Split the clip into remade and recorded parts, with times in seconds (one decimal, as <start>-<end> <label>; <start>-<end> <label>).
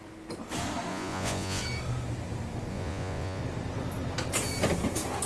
0.0-0.9 recorded; 0.9-1.6 remade; 1.6-2.7 recorded; 2.7-3.4 remade; 3.4-5.3 recorded